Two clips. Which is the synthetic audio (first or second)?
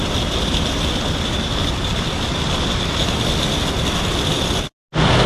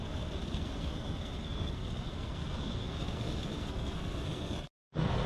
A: second